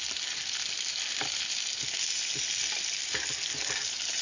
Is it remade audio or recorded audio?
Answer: recorded